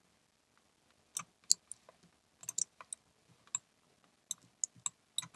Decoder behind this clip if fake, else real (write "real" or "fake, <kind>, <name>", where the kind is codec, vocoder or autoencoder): real